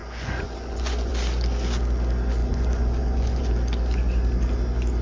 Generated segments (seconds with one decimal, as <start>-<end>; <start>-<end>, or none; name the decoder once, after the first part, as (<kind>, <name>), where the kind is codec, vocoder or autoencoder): 0.0-1.1 (vocoder, Vocos); 2.4-3.5